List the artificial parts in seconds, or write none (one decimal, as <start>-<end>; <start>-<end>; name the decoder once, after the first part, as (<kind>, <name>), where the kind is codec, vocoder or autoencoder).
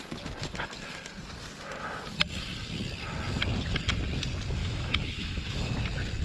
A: 4.6-5.7 (autoencoder, DAC-VAE)